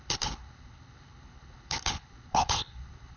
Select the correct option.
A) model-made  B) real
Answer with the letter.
A